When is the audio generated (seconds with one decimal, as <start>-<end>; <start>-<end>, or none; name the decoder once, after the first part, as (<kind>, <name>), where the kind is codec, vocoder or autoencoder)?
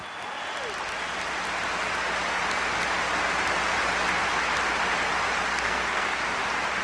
5.5-6.2 (codec, SNAC)